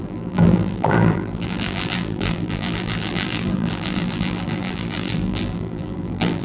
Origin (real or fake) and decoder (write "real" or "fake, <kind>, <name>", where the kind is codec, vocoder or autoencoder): fake, vocoder, BigVGAN v2